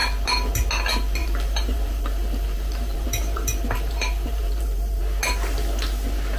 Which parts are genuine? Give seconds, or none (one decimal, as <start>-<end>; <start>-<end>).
0.0-1.2; 5.0-6.4